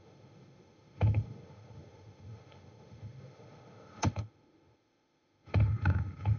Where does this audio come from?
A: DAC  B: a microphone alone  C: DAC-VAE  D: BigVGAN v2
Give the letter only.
C